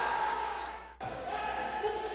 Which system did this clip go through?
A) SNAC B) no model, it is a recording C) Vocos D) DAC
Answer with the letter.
D